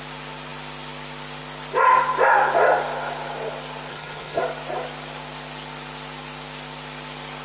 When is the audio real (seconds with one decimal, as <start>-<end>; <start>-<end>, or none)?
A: 0.0-3.9; 4.4-7.4